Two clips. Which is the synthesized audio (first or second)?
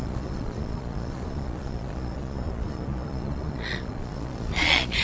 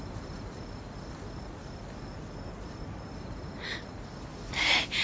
first